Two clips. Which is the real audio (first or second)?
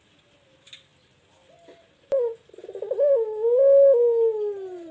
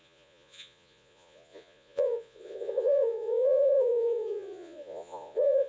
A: first